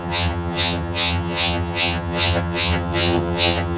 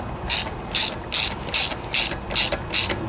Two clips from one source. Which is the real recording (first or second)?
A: second